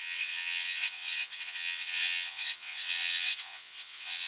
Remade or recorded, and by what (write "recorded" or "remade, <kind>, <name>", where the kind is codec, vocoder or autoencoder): remade, vocoder, WaveNeXt